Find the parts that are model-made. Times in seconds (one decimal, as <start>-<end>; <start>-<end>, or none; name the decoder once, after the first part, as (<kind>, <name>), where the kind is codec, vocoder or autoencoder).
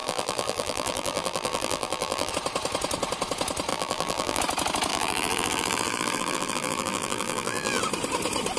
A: 0.0-2.3 (vocoder, BigVGAN v2); 3.7-4.4; 4.9-7.8